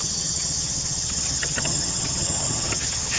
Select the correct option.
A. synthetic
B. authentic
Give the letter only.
A